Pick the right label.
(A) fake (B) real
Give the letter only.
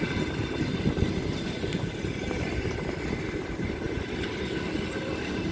B